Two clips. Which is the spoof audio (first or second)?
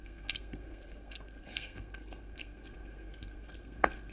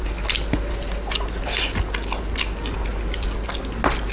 first